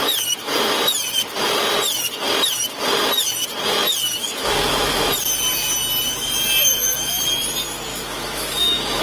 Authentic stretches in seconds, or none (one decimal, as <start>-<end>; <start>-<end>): 0.0-4.2; 5.1-6.6; 7.2-7.9